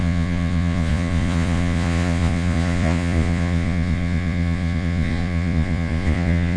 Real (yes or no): no